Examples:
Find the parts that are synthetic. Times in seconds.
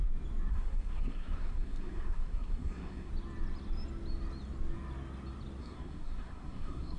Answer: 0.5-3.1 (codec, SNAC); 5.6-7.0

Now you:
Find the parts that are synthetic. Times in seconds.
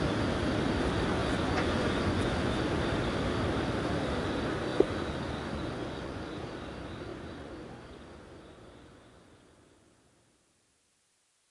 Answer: 1.2-2.7 (vocoder, Vocos); 4.7-6.2; 7.1-10.0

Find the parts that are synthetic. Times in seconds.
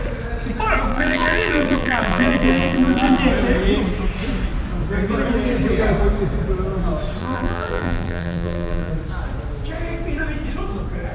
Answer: 0.9-3.2 (vocoder, BigVGAN v2); 7.2-8.9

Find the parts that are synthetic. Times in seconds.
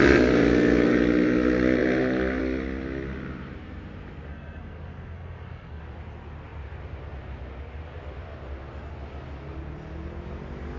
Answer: 4.3-5.8 (codec, SNAC)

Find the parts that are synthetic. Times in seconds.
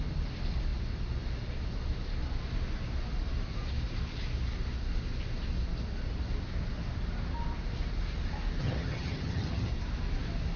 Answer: 8.6-9.7 (vocoder, HiFi-GAN)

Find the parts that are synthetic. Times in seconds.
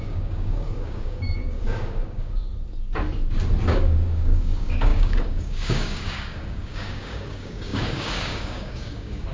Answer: 0.0-2.5 (codec, DAC); 3.7-9.3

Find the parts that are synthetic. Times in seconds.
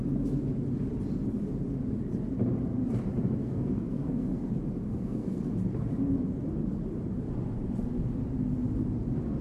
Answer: 3.4-4.5 (codec, SNAC); 4.9-5.5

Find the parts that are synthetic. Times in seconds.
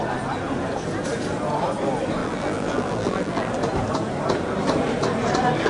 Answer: 2.2-3.5 (vocoder, BigVGAN v2)